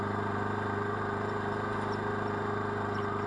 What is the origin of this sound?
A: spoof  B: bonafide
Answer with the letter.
B